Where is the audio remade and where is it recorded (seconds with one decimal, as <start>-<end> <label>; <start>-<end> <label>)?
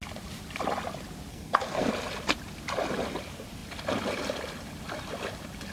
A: 0.0-1.3 recorded; 1.3-1.9 remade; 1.9-5.7 recorded